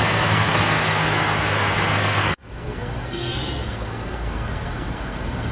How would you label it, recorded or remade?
remade